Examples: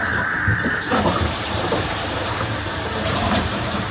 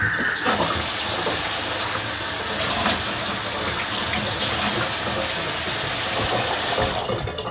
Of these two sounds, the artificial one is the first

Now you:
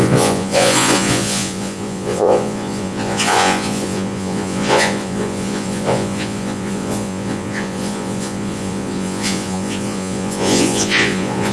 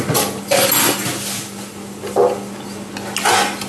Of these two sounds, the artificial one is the first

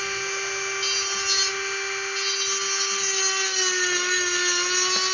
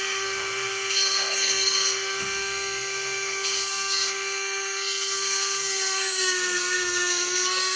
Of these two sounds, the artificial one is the second